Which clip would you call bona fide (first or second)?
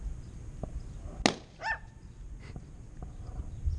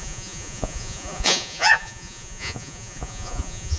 first